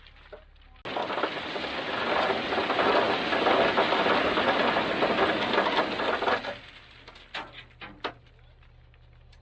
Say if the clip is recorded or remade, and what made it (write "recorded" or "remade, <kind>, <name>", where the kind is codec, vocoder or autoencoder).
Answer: recorded